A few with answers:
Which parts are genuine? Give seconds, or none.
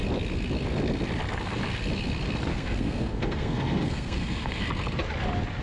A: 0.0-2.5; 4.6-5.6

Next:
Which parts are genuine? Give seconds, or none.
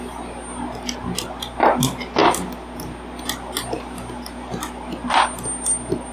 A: 0.0-6.1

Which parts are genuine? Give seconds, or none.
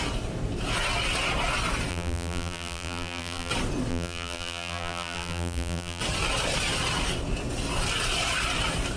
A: 0.0-1.9; 3.5-3.9; 6.0-9.0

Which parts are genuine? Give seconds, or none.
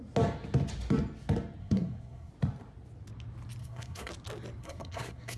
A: 0.0-1.6; 2.3-3.6; 4.1-4.6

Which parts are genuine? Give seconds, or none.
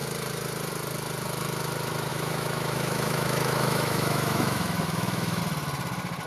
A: 0.0-2.1; 5.4-6.3